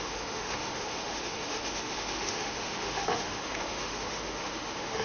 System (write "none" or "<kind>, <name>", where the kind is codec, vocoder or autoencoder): autoencoder, DAC-VAE